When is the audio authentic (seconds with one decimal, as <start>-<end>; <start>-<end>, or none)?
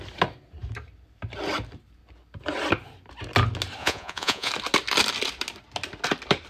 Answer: 0.0-3.8; 4.5-6.5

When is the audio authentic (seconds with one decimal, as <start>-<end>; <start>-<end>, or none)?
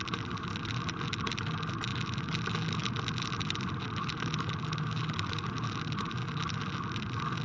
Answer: 0.0-7.4